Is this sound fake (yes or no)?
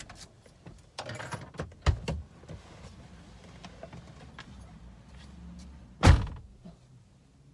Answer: no